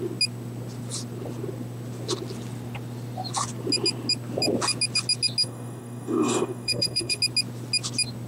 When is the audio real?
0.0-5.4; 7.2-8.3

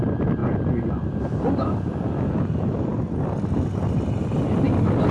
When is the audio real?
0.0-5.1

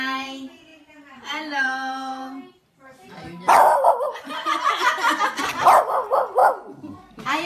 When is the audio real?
6.4-7.0